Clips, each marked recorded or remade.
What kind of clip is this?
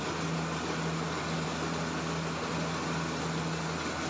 recorded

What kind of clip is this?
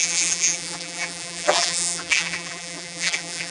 remade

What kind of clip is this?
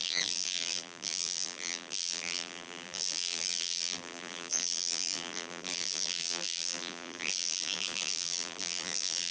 remade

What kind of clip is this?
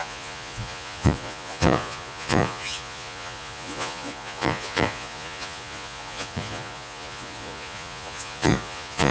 remade